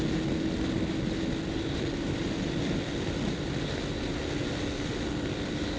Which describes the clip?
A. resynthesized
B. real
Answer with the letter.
B